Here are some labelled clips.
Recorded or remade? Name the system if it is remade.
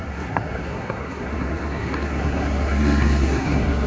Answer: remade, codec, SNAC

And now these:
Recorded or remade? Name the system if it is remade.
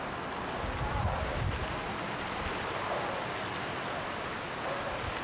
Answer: recorded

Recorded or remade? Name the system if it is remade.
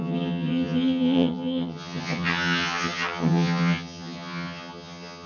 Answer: remade, vocoder, HiFi-GAN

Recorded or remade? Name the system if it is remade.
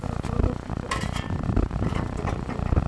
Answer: remade, vocoder, BigVGAN v2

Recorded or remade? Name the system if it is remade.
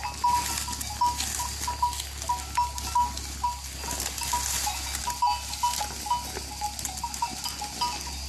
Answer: recorded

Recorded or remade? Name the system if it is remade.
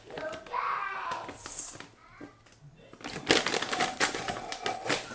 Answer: recorded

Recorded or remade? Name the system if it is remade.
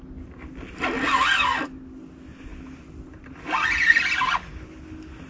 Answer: recorded